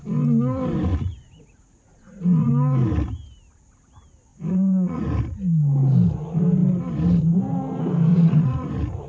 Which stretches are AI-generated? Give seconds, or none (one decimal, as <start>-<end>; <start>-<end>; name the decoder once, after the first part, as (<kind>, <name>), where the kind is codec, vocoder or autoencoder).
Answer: 0.9-2.5 (vocoder, Vocos); 4.3-5.0; 8.1-8.7